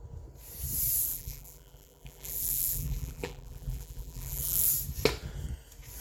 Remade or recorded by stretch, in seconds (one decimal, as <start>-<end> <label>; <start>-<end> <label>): 0.0-1.1 recorded; 1.1-4.7 remade; 4.7-6.0 recorded